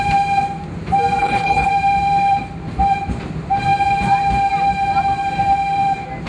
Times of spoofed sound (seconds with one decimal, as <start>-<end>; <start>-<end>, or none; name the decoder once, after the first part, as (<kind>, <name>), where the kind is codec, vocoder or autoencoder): 1.2-1.7 (codec, HILCodec)